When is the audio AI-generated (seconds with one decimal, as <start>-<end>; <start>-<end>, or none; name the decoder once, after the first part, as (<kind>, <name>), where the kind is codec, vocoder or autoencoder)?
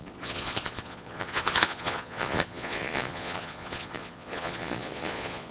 0.0-5.5 (vocoder, Vocos)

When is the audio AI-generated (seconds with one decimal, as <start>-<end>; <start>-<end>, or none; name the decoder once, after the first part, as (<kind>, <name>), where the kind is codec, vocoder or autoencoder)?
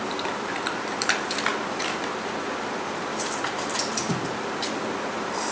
none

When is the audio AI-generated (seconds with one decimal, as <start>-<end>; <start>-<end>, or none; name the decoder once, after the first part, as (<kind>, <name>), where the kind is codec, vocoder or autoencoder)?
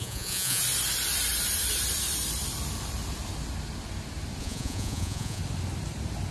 0.0-0.6 (vocoder, Vocos); 4.4-5.4